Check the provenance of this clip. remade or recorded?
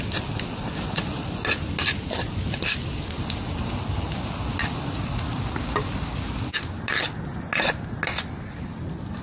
recorded